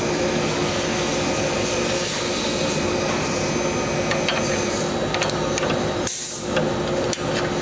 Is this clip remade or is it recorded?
recorded